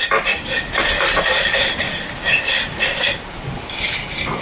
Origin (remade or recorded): remade